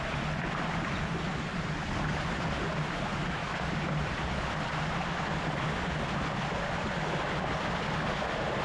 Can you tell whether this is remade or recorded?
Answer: recorded